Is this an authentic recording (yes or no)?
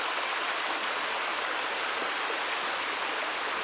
yes